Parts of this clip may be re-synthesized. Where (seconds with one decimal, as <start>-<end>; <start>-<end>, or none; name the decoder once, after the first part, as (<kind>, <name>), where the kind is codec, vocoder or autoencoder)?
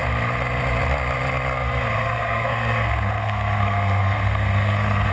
1.9-5.1 (codec, SNAC)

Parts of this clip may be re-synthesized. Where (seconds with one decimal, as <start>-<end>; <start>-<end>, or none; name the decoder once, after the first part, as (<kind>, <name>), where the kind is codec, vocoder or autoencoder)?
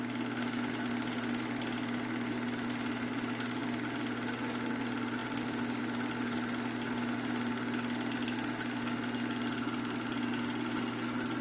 none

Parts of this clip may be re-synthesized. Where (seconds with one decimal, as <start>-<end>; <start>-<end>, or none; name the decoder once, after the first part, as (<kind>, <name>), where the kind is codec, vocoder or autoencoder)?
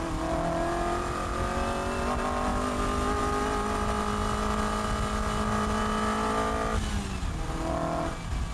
none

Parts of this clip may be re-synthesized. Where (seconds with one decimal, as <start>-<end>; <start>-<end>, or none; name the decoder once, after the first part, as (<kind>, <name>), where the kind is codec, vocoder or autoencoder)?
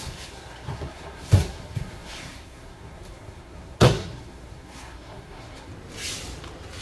0.0-5.7 (codec, SNAC)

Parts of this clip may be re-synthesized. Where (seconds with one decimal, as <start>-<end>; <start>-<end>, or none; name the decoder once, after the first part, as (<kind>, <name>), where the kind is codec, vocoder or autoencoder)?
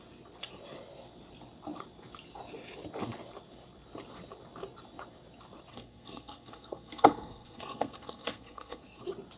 5.7-9.0 (codec, SNAC)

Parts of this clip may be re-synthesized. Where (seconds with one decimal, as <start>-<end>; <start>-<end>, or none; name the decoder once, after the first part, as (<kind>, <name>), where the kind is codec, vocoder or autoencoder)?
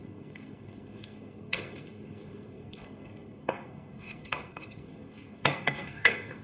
0.0-6.4 (codec, SNAC)